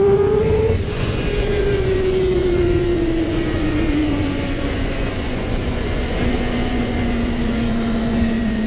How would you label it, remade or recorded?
remade